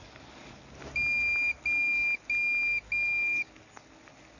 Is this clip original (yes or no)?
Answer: yes